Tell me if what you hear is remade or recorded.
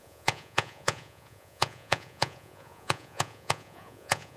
remade